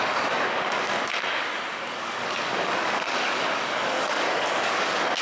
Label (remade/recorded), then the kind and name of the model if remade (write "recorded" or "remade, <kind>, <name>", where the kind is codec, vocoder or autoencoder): remade, codec, DAC